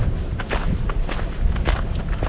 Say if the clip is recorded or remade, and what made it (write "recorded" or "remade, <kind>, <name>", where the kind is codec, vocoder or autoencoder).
recorded